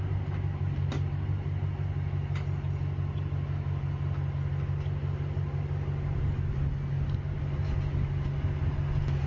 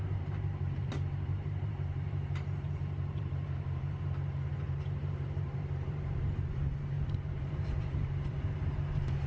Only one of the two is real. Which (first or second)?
first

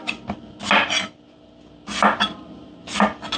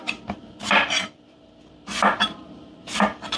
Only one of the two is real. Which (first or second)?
first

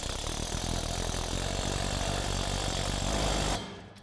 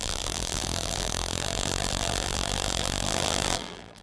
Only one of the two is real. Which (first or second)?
first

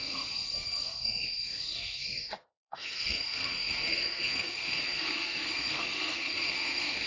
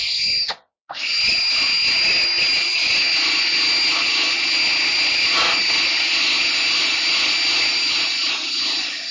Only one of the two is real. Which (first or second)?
second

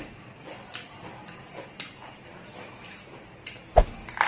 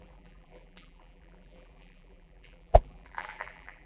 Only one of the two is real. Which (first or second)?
first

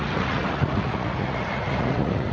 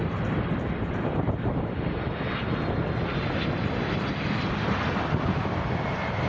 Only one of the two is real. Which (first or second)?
second